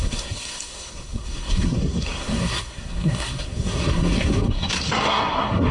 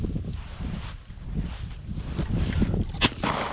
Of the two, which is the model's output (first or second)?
first